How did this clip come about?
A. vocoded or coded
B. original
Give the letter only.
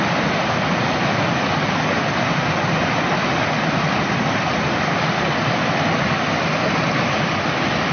B